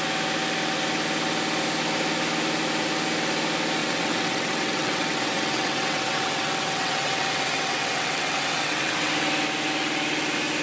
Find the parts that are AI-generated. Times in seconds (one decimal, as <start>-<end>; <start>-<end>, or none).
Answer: 3.8-9.1